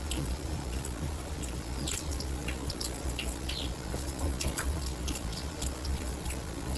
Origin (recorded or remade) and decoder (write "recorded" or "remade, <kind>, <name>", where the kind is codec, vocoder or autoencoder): remade, vocoder, Vocos